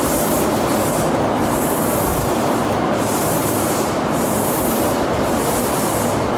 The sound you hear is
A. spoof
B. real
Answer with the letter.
A